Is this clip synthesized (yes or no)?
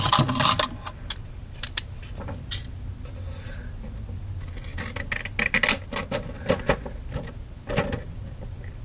no